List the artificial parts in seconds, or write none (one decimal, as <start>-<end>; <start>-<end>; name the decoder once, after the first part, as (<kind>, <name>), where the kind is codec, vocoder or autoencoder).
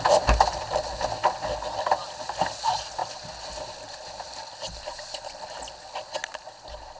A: none